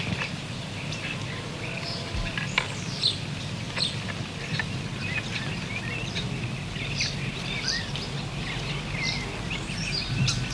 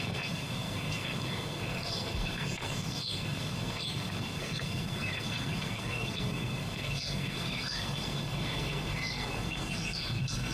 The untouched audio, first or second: first